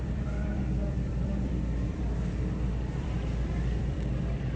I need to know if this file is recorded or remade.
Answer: remade